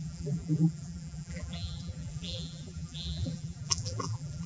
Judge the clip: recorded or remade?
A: remade